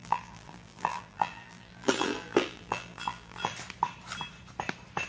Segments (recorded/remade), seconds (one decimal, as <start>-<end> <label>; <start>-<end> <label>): 0.0-3.5 remade; 3.5-5.1 recorded